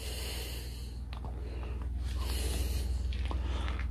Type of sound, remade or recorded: recorded